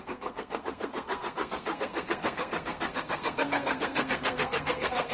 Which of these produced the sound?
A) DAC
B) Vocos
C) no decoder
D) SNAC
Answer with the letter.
D